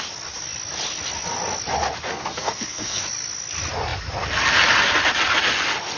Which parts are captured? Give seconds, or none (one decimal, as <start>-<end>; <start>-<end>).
0.0-2.1; 3.0-6.0